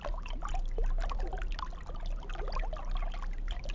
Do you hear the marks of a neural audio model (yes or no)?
no